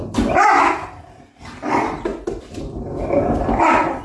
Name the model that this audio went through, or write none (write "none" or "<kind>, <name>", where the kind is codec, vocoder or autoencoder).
none